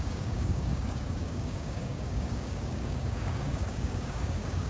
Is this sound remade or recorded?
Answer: remade